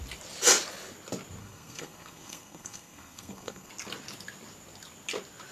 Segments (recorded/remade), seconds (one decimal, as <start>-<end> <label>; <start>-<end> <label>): 0.0-1.4 recorded; 1.4-3.7 remade; 3.7-5.5 recorded